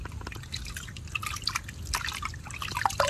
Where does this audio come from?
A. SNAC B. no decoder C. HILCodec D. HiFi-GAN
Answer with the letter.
B